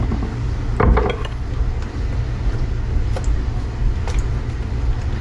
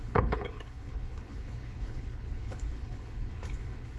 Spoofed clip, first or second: second